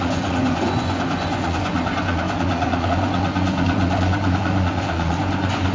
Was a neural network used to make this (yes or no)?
yes